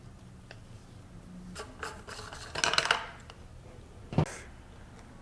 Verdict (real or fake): real